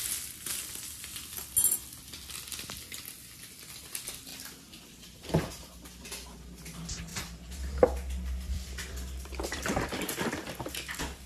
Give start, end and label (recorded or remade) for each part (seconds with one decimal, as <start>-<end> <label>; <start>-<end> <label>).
0.0-4.3 recorded; 4.3-5.5 remade; 5.5-7.1 recorded; 7.1-10.7 remade; 10.7-11.3 recorded